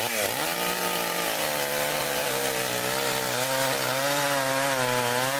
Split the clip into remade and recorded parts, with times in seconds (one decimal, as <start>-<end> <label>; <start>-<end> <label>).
0.0-2.0 recorded; 2.0-2.6 remade; 2.6-5.4 recorded